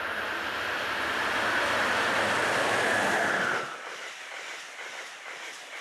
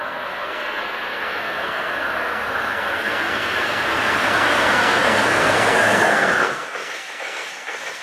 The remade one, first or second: second